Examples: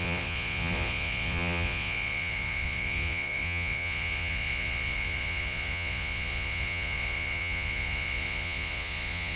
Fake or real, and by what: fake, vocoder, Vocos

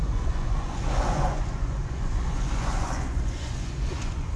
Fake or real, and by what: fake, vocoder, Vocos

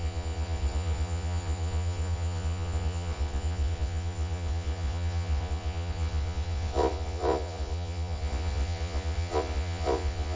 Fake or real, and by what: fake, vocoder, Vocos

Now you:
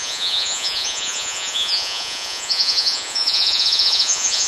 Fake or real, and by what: fake, vocoder, Vocos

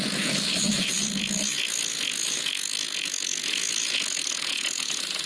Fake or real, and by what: fake, vocoder, Vocos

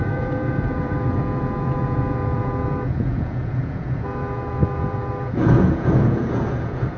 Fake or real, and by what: fake, vocoder, Vocos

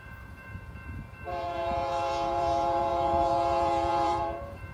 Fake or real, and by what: fake, vocoder, Vocos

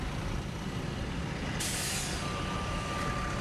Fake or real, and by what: real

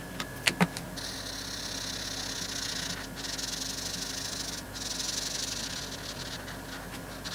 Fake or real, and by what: real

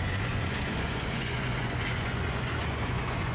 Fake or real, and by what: fake, vocoder, Vocos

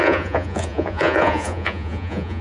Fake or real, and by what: fake, vocoder, Vocos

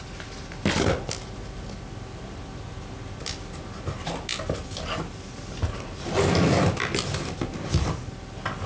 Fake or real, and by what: real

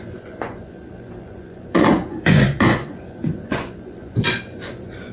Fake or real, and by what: fake, vocoder, Vocos